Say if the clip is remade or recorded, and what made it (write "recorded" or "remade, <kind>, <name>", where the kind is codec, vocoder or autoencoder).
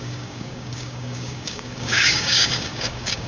remade, codec, DAC